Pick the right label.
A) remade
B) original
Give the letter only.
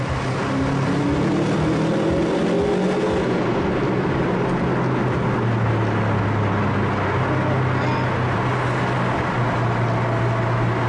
B